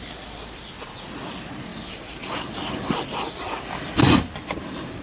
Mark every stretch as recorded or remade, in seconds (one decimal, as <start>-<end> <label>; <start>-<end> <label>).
0.0-1.7 recorded; 1.7-5.0 remade